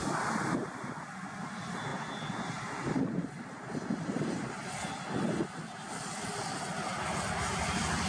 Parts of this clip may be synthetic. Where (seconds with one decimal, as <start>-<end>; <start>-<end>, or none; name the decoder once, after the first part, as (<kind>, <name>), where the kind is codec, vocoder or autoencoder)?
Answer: none